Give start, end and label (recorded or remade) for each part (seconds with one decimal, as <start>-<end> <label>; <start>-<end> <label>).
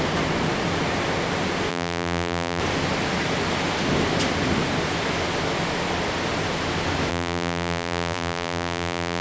0.0-1.7 recorded; 1.7-2.6 remade; 2.6-7.1 recorded; 7.1-9.2 remade